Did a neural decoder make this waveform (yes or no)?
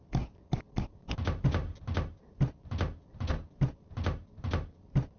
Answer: no